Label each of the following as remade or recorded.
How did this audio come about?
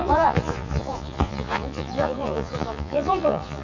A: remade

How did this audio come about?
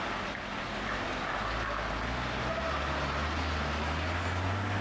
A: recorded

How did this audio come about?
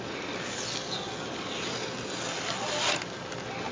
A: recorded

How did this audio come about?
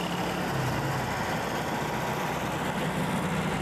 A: recorded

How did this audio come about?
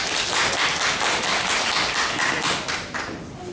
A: recorded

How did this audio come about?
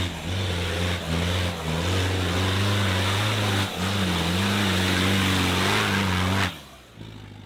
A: recorded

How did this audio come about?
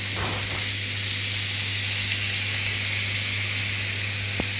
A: recorded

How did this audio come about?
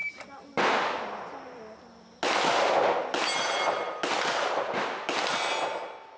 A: recorded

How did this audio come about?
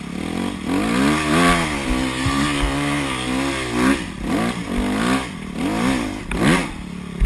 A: recorded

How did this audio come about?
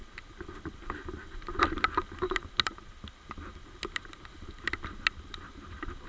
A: recorded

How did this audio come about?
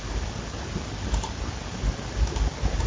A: recorded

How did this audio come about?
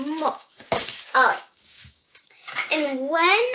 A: remade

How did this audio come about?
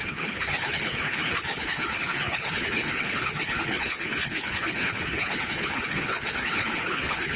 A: remade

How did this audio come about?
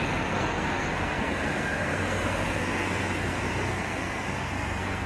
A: remade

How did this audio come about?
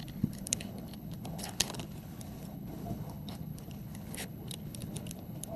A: remade